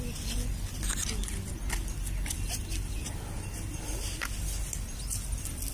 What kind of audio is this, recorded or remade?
recorded